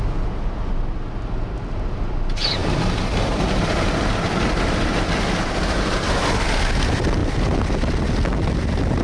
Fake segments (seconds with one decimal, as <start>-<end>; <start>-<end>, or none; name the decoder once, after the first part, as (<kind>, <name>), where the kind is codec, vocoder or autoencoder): 2.6-3.8 (vocoder, BigVGAN v2)